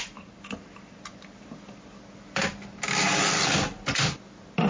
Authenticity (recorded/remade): recorded